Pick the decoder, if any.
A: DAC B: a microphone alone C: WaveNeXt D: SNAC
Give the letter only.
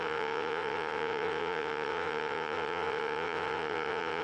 C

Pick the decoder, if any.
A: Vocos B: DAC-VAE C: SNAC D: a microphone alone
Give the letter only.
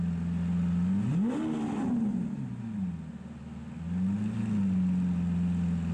D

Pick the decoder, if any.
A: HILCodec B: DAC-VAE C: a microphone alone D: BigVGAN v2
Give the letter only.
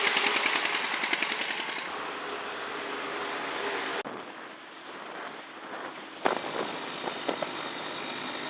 C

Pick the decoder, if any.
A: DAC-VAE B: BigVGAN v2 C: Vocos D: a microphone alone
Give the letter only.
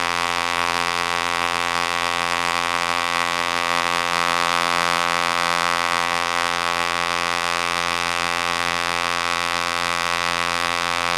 B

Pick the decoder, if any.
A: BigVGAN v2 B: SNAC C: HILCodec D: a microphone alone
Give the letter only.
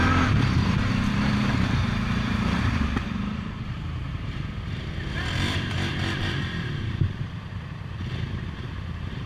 A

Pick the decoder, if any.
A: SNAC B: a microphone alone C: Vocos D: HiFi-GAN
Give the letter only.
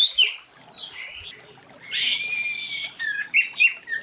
B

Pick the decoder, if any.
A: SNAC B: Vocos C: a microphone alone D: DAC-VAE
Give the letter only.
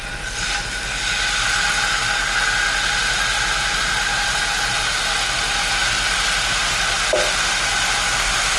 C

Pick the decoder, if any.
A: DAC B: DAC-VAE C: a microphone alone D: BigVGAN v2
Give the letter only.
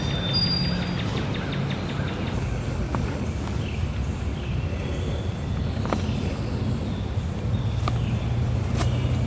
C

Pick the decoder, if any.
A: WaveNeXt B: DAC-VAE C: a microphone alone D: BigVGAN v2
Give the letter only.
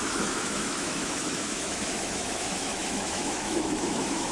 B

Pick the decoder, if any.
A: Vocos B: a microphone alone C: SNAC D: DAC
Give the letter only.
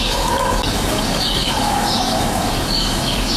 D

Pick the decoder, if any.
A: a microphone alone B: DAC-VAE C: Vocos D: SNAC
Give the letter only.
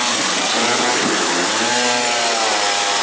A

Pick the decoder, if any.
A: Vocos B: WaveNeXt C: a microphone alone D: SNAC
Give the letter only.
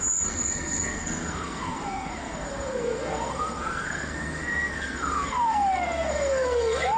D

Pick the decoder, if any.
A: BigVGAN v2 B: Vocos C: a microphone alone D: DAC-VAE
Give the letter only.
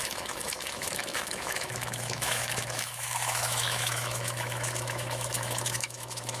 D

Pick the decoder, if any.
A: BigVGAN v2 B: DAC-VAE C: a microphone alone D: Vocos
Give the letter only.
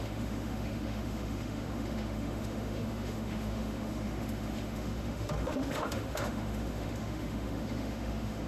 B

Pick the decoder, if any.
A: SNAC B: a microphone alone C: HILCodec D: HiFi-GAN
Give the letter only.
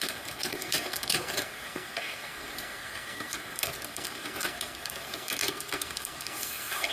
A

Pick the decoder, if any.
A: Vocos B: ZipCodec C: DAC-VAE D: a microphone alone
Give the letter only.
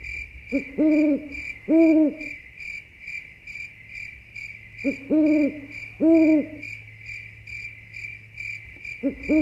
D